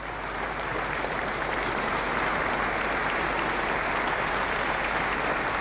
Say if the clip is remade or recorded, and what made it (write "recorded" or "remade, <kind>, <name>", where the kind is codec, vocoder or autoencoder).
recorded